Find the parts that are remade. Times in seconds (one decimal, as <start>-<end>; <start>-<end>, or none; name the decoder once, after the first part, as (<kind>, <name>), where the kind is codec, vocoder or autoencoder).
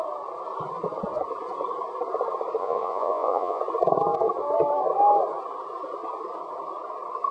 2.6-3.6 (vocoder, Vocos)